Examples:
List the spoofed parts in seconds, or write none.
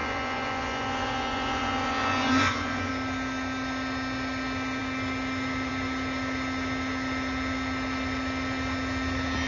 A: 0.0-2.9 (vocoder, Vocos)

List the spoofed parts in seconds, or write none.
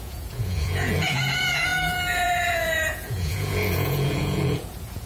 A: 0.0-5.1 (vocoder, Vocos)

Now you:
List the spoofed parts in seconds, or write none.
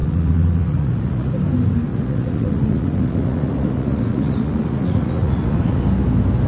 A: 0.0-1.3 (vocoder, Vocos); 1.9-5.8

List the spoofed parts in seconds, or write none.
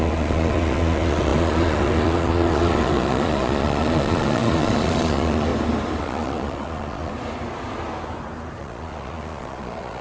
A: 0.0-5.5 (vocoder, Vocos); 6.0-7.1; 8.6-10.0